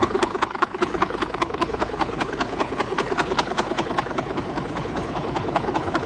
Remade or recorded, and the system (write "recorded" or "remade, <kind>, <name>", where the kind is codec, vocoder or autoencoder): remade, codec, HILCodec